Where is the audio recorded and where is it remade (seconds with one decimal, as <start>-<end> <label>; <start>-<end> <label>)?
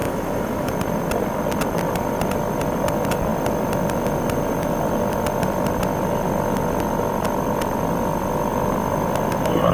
0.0-0.7 remade; 0.7-9.7 recorded